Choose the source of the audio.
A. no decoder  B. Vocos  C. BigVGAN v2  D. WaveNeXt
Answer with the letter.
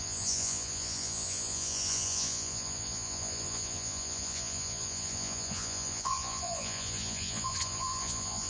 B